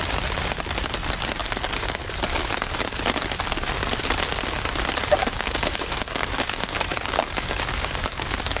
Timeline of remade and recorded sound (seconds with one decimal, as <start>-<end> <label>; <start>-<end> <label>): 0.0-1.4 recorded; 1.4-2.0 remade; 2.0-5.2 recorded; 5.2-8.6 remade